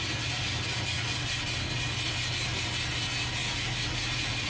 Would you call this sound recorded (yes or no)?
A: yes